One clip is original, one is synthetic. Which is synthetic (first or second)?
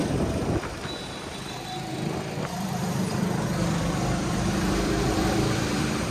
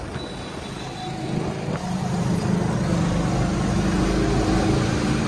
first